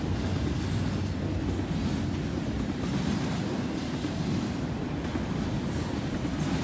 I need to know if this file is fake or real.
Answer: real